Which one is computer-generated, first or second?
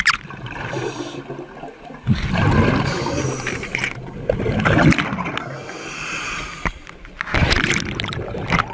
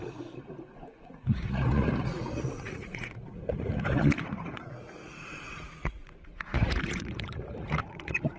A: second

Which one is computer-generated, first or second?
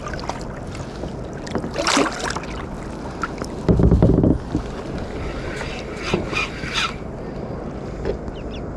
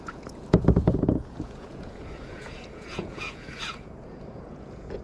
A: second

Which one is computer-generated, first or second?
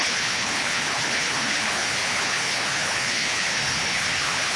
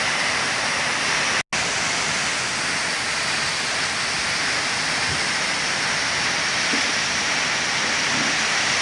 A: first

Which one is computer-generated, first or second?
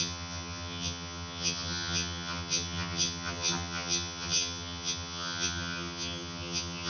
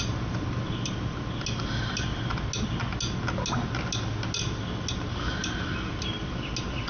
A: first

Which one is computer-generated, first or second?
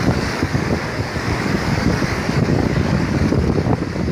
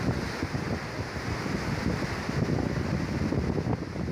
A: first